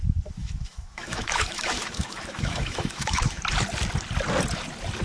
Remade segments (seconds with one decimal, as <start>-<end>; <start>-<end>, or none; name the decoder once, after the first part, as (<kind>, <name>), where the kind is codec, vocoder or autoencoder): 0.4-3.4 (autoencoder, DAC-VAE)